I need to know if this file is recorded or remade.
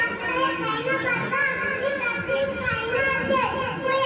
recorded